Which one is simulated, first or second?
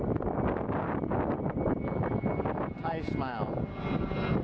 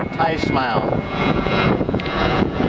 second